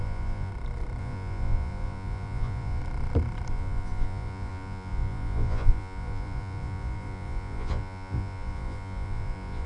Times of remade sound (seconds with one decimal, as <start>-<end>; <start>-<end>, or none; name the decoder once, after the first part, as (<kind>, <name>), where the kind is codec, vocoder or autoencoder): 0.0-0.5 (vocoder, Vocos); 1.0-2.8; 3.5-9.7